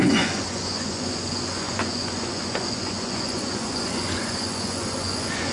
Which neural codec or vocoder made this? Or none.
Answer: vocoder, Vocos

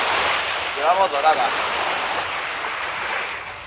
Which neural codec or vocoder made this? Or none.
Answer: none